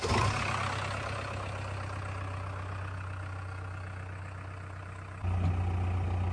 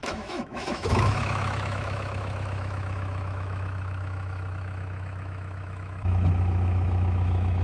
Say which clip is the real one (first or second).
first